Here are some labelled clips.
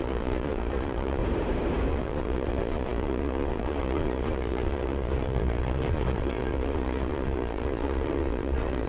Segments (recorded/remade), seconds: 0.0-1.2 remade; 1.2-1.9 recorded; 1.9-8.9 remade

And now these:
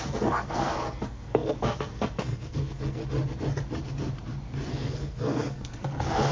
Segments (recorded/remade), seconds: 0.0-3.0 remade; 3.0-4.7 recorded; 4.7-6.3 remade

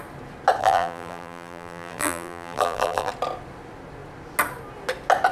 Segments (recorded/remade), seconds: 0.0-0.6 recorded; 0.6-3.1 remade; 3.1-5.3 recorded

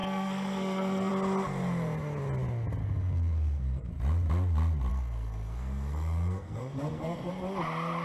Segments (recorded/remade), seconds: 0.0-1.1 remade; 1.1-2.8 recorded; 2.8-3.9 remade; 3.9-4.9 recorded; 4.9-7.3 remade; 7.3-8.0 recorded